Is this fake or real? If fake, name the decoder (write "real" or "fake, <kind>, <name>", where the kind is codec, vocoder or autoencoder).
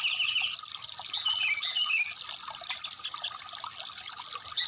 real